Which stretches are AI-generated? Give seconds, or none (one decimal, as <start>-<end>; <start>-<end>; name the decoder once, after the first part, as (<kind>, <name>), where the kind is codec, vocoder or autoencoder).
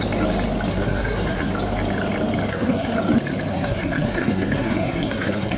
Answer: 0.7-1.5 (codec, SNAC); 2.5-3.0; 3.5-5.6